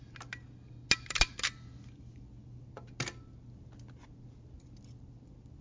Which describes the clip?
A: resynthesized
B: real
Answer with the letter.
B